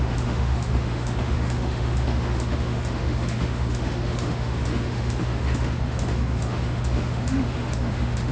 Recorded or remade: remade